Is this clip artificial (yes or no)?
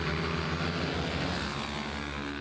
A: no